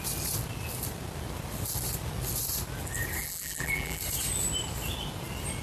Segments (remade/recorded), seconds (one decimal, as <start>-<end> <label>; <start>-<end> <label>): 0.0-3.2 recorded; 3.2-4.0 remade; 4.0-5.6 recorded